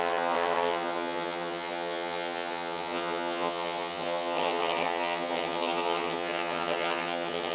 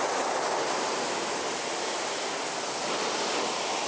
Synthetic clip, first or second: first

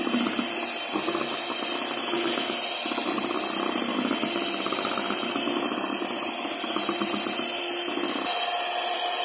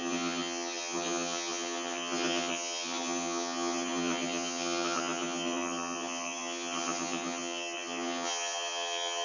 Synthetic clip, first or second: second